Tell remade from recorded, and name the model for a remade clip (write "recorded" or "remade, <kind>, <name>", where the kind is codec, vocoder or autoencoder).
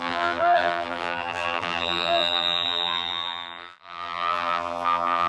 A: remade, vocoder, BigVGAN v2